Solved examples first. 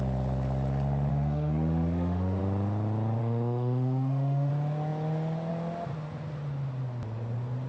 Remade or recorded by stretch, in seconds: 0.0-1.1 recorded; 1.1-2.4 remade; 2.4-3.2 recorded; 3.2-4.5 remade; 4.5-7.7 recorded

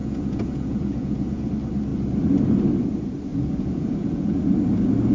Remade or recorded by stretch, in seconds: 0.0-1.5 remade; 1.5-3.3 recorded; 3.3-4.4 remade; 4.4-5.1 recorded

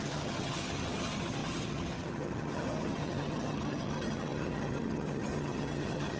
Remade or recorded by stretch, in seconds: 0.0-6.2 remade

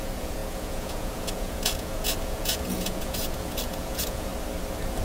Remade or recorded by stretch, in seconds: 0.0-4.3 remade; 4.3-5.0 recorded

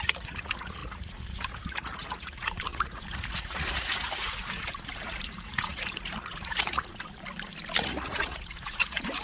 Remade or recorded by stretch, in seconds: 0.0-6.9 remade; 6.9-7.8 recorded; 7.8-9.2 remade